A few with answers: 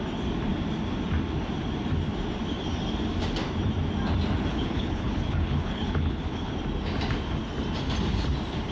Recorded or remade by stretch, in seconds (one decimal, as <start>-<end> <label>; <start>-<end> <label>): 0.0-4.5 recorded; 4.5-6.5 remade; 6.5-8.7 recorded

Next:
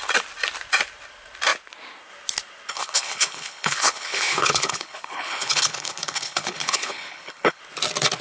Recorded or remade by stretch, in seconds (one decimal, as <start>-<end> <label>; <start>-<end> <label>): 0.0-2.7 recorded; 2.7-7.6 remade; 7.6-8.2 recorded

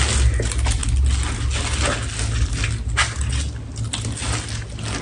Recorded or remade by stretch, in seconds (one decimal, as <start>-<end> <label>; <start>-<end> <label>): 0.0-5.0 recorded

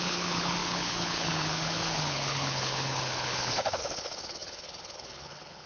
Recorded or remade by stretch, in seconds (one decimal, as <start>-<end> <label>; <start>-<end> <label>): 0.0-5.7 remade

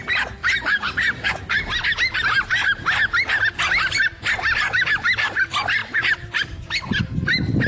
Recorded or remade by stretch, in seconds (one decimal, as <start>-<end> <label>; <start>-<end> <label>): 0.0-7.7 recorded